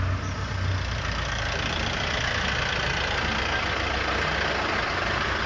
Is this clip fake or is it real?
real